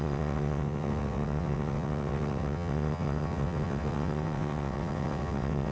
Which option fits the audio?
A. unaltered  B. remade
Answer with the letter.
B